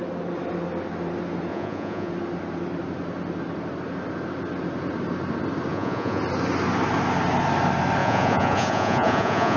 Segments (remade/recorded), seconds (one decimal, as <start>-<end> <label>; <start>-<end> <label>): 0.0-1.5 recorded; 1.5-2.1 remade; 2.1-5.7 recorded; 5.7-6.2 remade; 6.2-8.0 recorded; 8.0-9.6 remade